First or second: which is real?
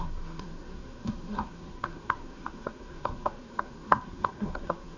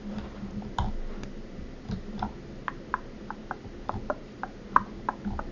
second